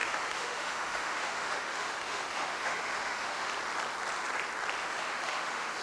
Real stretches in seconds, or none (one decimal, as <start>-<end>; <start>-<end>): 3.5-4.8